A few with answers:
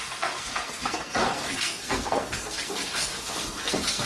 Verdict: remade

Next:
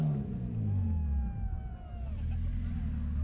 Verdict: recorded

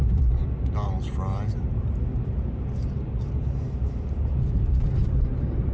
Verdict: recorded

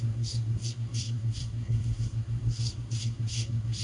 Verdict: remade